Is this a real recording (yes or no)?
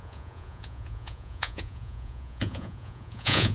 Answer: no